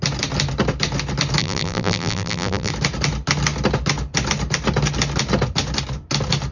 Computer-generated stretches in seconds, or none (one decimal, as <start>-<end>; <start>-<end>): 1.4-2.7